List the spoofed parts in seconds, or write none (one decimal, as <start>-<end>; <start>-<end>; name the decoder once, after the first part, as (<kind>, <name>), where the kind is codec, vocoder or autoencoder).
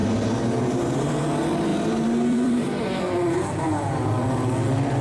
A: 1.7-3.0 (vocoder, BigVGAN v2)